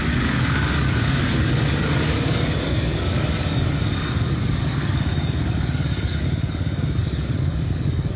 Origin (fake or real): fake